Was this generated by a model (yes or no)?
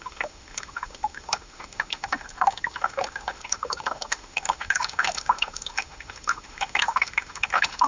yes